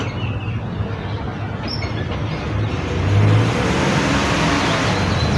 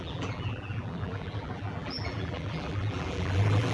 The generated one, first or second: second